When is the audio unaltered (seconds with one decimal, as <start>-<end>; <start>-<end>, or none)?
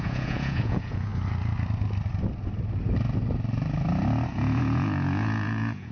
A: 1.1-4.3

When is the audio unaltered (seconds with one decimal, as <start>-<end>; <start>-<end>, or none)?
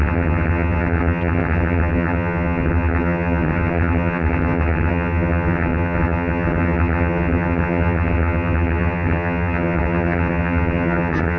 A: none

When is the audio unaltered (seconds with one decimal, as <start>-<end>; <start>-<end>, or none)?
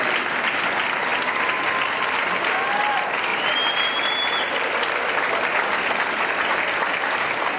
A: 0.0-7.6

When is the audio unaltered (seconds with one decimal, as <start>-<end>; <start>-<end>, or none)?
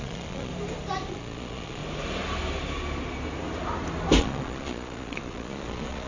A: 0.5-1.1; 1.8-4.2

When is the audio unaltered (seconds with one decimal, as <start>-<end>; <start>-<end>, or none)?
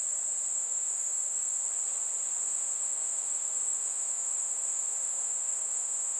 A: 0.0-0.5; 1.6-2.5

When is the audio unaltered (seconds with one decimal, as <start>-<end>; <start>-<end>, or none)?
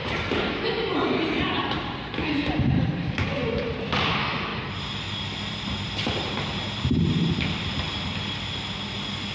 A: 0.0-1.6; 2.9-4.5; 7.4-9.3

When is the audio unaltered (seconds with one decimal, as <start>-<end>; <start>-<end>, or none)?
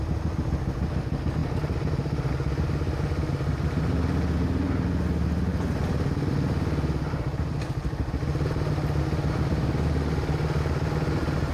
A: 0.0-11.5